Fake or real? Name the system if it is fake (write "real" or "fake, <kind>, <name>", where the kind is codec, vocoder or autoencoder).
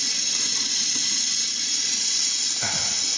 real